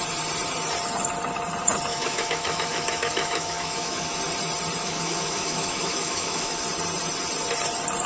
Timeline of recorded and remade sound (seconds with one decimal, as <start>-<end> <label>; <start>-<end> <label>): 0.0-1.9 recorded; 1.9-4.2 remade; 4.2-4.8 recorded; 4.8-6.6 remade; 6.6-8.1 recorded